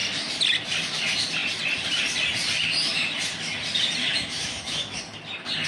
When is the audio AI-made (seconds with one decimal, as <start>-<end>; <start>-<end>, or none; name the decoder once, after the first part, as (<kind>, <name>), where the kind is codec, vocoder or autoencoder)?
4.0-5.0 (autoencoder, DAC-VAE)